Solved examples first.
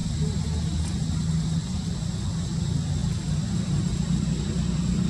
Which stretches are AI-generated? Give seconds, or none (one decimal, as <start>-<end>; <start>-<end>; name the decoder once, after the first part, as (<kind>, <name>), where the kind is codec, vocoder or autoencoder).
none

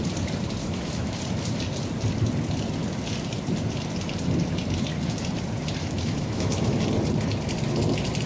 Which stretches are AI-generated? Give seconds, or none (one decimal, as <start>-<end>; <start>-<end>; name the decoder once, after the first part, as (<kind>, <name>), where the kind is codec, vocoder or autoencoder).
0.6-1.2 (autoencoder, DAC-VAE); 5.8-6.8

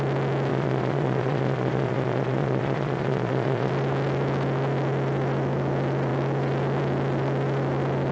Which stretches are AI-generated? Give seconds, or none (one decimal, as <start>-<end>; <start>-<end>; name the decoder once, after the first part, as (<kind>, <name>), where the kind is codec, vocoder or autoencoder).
0.5-3.7 (vocoder, Vocos)

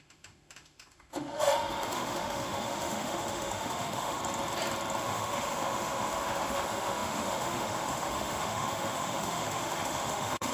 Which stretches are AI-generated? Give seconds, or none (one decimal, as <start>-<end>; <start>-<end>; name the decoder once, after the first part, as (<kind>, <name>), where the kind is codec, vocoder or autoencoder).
0.0-4.2 (autoencoder, DAC-VAE); 5.0-10.5